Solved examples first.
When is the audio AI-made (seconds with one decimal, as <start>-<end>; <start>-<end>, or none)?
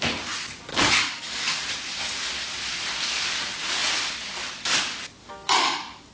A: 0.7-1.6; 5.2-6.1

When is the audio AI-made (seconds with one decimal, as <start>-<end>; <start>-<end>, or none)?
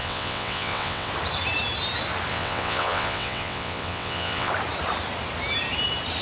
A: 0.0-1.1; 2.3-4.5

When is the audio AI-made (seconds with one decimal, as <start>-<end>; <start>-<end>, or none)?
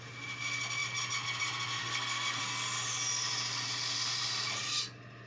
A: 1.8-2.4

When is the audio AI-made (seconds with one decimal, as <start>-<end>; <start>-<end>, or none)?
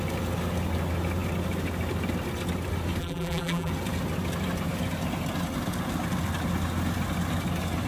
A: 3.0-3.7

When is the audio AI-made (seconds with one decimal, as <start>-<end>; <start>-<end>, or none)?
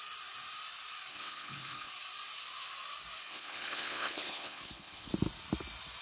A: 1.1-1.9; 3.3-5.1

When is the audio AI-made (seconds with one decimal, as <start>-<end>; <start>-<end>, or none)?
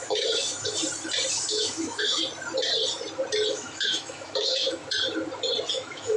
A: 0.0-0.8; 1.3-2.2; 3.5-4.8; 5.7-6.2